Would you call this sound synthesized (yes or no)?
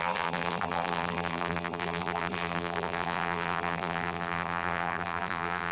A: yes